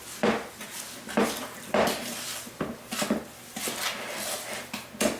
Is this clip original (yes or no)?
yes